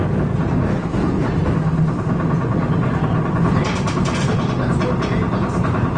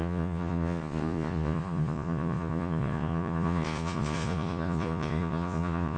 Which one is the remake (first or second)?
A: second